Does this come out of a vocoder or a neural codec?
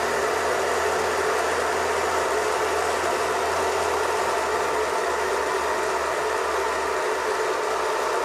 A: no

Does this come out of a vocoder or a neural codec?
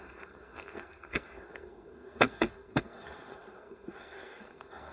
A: yes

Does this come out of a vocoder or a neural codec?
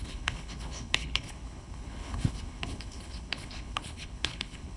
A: yes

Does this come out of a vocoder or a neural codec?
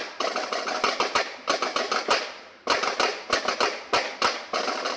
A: no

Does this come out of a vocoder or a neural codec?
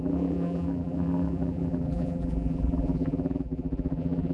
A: yes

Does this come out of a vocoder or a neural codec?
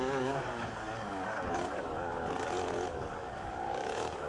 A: yes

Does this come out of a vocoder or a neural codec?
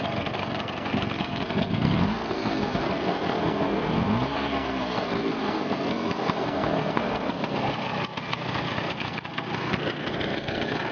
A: yes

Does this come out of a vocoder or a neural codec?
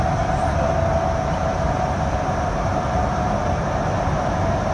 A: no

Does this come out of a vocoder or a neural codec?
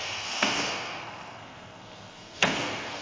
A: yes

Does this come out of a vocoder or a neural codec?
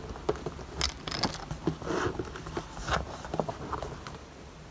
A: no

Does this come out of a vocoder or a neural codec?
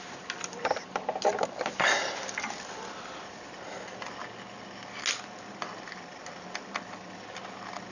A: no